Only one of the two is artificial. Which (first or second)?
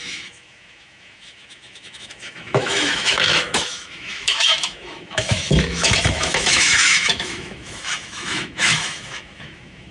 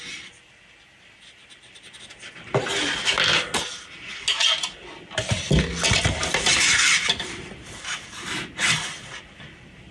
first